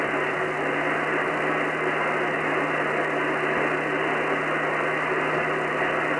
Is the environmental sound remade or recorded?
recorded